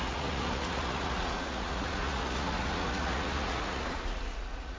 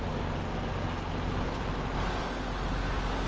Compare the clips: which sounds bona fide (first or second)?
second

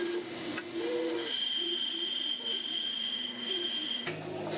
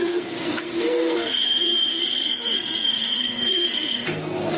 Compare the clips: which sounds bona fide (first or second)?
first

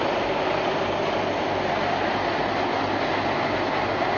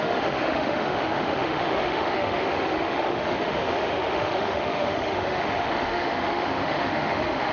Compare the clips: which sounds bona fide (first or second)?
first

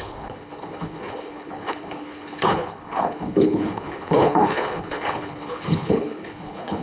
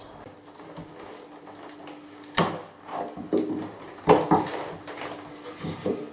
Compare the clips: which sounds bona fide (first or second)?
second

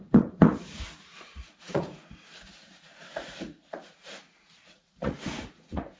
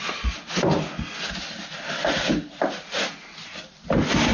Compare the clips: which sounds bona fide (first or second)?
second